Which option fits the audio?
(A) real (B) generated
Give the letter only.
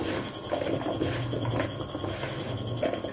A